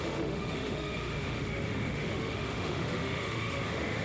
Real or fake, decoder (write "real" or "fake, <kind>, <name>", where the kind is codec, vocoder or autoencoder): fake, autoencoder, DAC-VAE